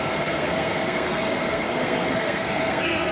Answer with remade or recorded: remade